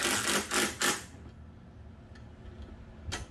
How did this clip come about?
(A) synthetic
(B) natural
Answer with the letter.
B